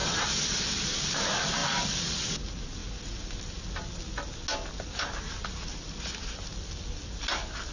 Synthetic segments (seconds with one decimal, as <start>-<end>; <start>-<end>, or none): none